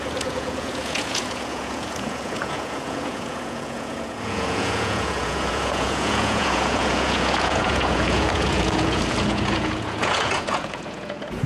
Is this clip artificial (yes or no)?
yes